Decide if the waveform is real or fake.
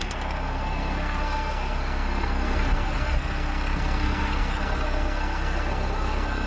fake